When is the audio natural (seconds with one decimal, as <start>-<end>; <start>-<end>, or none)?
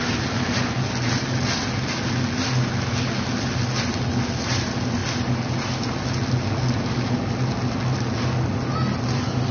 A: 0.0-9.5